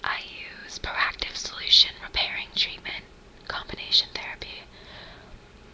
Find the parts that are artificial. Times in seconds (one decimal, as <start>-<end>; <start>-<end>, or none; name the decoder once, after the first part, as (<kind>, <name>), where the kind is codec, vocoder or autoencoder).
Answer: none